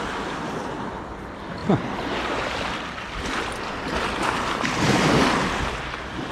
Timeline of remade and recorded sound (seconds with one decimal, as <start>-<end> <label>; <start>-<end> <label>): 0.0-6.3 recorded